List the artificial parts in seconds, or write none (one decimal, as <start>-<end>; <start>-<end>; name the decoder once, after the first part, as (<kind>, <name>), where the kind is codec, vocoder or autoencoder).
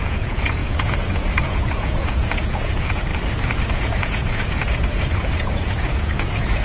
0.0-3.1 (vocoder, Vocos); 3.7-6.6